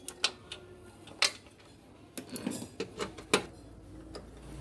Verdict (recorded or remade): recorded